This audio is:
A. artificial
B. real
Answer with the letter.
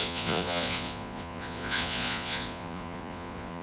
A